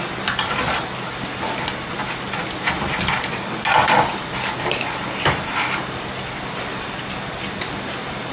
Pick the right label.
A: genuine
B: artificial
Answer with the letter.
A